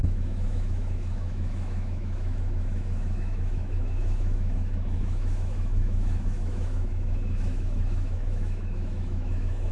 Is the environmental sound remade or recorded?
remade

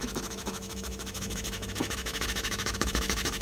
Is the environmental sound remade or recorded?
remade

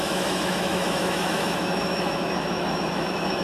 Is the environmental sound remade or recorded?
remade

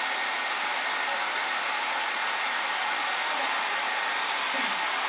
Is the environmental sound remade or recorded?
recorded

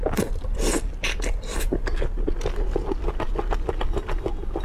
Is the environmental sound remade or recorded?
recorded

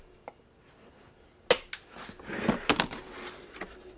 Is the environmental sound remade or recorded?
recorded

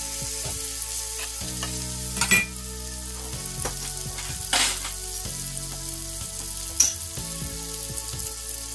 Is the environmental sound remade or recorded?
recorded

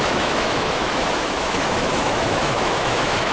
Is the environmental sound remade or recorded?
remade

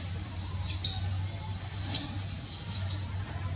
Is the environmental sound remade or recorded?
recorded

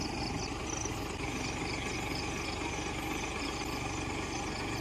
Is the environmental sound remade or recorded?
recorded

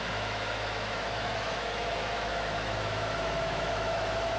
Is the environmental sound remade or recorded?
remade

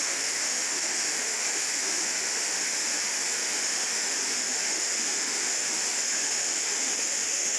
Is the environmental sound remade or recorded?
remade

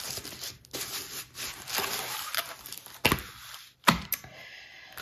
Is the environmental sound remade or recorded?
recorded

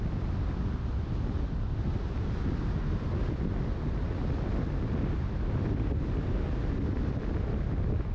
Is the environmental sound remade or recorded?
recorded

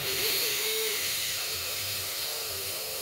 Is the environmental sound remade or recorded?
remade